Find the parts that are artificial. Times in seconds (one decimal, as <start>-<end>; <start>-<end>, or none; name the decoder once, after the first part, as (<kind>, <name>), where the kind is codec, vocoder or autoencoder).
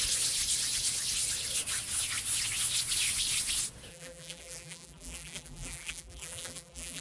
3.9-7.0 (vocoder, BigVGAN v2)